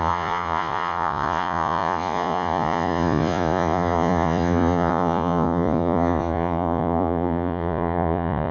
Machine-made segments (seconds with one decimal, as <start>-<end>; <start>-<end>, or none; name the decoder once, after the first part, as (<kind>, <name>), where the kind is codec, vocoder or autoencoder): 0.0-8.5 (vocoder, Vocos)